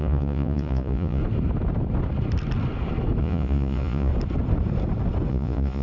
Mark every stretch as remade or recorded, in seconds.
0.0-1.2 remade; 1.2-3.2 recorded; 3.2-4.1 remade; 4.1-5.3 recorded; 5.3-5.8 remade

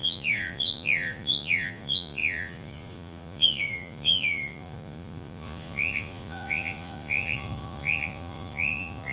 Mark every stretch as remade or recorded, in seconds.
0.0-9.1 remade

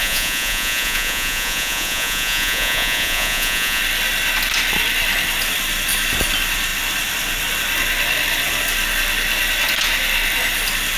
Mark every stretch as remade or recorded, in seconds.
0.0-3.8 remade; 3.8-11.0 recorded

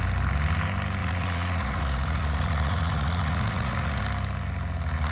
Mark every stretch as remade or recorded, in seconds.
0.0-1.0 recorded; 1.0-4.0 remade; 4.0-5.1 recorded

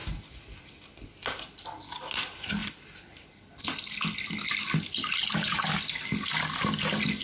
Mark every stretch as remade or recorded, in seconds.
0.0-7.2 recorded

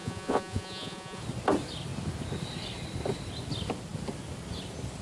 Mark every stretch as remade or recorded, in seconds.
0.0-1.2 remade; 1.2-5.0 recorded